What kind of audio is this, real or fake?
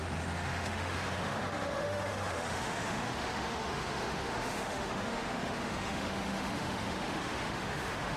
fake